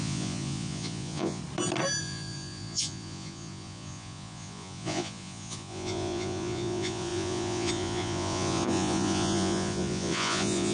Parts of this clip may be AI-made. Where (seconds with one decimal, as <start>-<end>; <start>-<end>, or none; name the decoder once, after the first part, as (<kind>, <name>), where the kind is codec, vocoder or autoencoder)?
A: 0.0-1.4 (vocoder, Vocos); 2.0-10.7